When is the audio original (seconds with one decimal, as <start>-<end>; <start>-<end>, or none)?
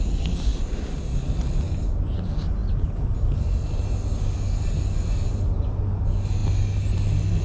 0.0-7.4